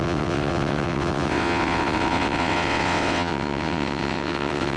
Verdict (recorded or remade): remade